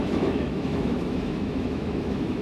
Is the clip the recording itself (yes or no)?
no